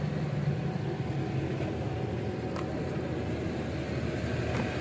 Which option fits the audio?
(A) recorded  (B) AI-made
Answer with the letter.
A